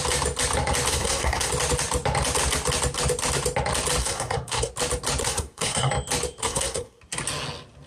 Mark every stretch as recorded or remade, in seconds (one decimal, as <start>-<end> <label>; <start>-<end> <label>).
0.0-0.9 recorded; 0.9-1.5 remade; 1.5-4.0 recorded; 4.0-4.7 remade; 4.7-5.2 recorded; 5.2-5.9 remade; 5.9-6.4 recorded; 6.4-7.0 remade; 7.0-7.9 recorded